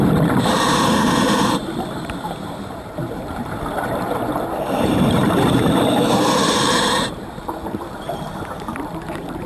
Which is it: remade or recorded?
remade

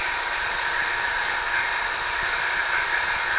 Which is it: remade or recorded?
recorded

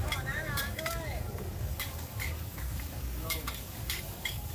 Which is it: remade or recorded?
remade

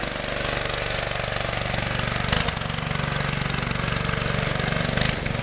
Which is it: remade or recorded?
recorded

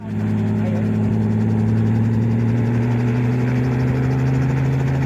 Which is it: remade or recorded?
recorded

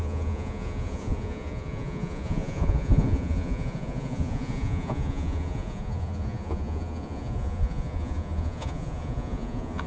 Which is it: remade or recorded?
remade